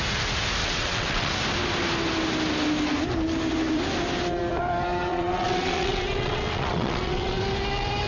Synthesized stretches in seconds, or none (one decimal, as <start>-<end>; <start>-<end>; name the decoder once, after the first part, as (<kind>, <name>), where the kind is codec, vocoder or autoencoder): 0.6-1.3 (vocoder, WaveNeXt); 5.1-7.4